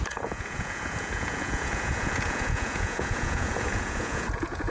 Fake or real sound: fake